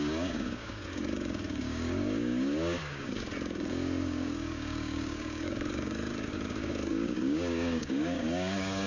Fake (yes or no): yes